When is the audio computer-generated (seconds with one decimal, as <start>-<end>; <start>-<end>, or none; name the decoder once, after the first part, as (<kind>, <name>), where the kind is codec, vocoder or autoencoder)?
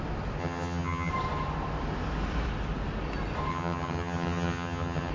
0.4-1.1 (vocoder, HiFi-GAN); 3.5-5.1